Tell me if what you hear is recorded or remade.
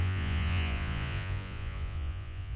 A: remade